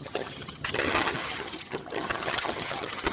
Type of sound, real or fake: fake